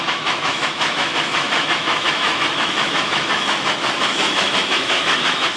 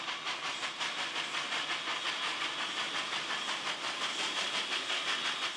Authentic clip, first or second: second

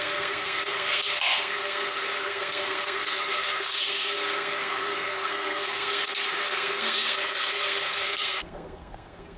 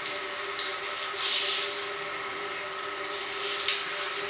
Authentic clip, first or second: second